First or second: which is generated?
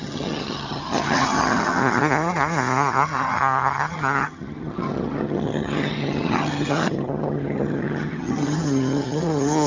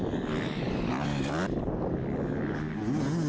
first